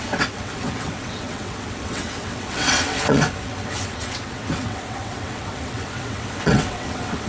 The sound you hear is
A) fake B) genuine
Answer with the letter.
A